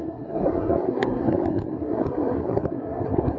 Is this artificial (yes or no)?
yes